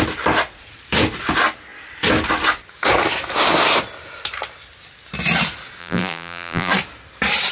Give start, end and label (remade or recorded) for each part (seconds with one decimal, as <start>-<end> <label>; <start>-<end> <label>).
0.0-5.8 recorded; 5.8-6.7 remade; 6.7-7.5 recorded